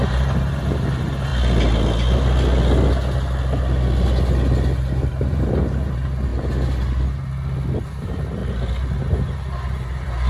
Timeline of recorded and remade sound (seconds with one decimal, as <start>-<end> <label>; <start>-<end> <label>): 0.0-1.3 remade; 1.3-5.1 recorded; 5.1-6.3 remade; 6.3-7.9 recorded; 7.9-8.4 remade; 8.4-9.0 recorded; 9.0-10.3 remade